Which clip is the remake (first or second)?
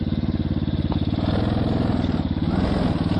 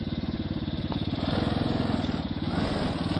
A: second